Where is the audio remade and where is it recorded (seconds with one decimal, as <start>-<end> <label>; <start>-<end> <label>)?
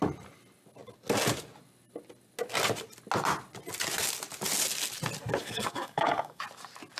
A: 0.0-5.4 recorded; 5.4-6.4 remade; 6.4-7.0 recorded